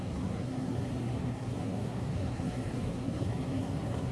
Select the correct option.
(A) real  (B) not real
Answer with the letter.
B